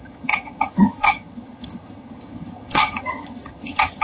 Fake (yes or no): yes